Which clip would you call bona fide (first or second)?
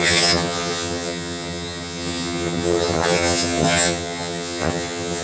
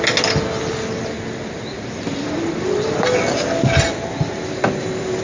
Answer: second